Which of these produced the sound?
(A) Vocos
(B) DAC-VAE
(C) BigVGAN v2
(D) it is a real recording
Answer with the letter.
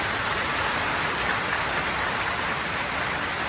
C